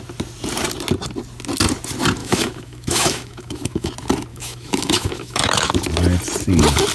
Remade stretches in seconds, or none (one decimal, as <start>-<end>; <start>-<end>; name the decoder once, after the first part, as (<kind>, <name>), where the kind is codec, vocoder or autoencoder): 2.2-3.9 (autoencoder, DAC-VAE); 4.3-5.7